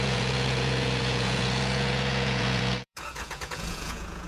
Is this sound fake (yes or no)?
yes